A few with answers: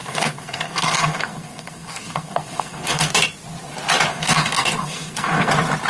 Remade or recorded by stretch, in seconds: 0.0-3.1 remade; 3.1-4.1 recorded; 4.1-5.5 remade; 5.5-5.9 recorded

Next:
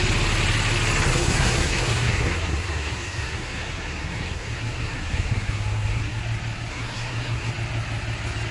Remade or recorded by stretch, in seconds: 0.0-1.1 recorded; 1.1-6.2 remade; 6.2-6.7 recorded; 6.7-7.5 remade; 7.5-8.5 recorded